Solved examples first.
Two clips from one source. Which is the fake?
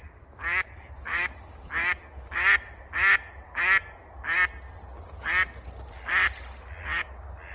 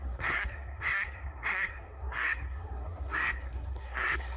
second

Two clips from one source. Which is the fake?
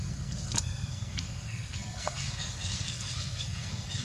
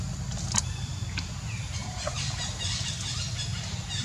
first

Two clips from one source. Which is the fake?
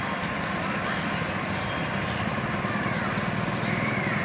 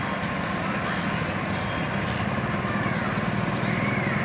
first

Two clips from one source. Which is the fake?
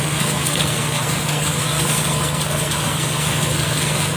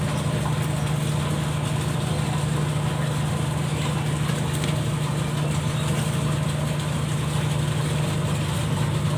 first